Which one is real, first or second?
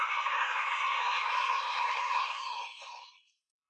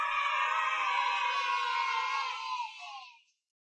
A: second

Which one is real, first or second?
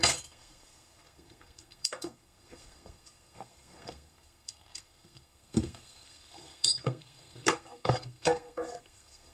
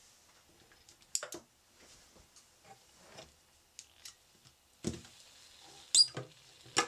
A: second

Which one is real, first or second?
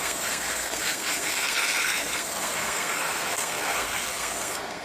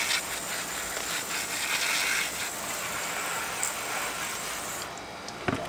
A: second